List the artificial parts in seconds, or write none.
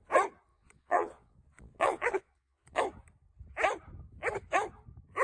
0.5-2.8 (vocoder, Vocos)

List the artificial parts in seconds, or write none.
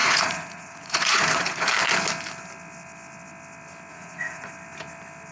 0.0-1.7 (vocoder, Vocos); 3.9-4.5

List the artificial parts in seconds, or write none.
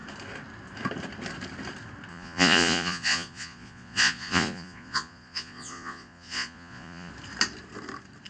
2.1-7.1 (vocoder, Vocos)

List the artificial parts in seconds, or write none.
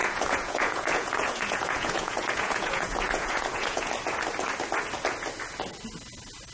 0.0-3.9 (vocoder, Vocos)